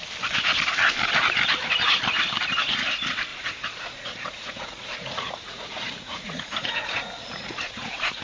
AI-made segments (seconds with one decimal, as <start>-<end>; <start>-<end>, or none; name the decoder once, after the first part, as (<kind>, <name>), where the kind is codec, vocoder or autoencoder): 3.3-8.2 (vocoder, Vocos)